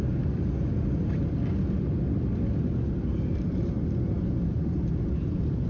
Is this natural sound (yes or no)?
no